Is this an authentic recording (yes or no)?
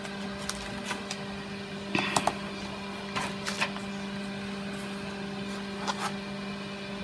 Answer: yes